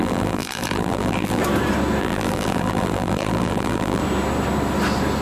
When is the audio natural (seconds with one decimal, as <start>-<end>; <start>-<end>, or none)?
1.4-2.0; 4.0-5.2